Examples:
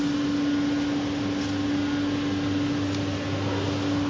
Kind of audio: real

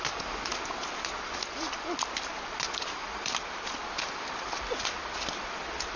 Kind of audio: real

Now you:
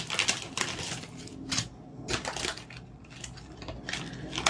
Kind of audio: real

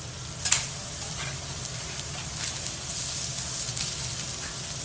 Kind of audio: real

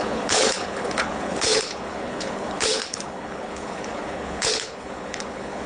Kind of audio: fake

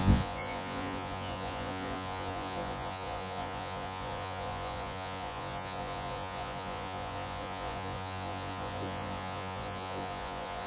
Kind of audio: fake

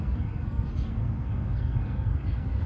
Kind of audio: fake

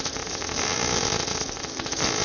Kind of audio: real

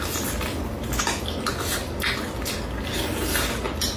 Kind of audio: real